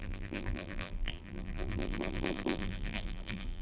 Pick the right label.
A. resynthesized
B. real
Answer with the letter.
A